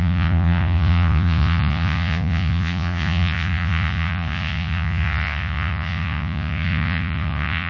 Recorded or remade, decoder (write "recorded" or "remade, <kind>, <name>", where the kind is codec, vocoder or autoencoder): remade, vocoder, Vocos